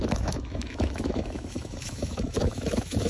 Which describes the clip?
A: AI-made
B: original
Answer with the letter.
A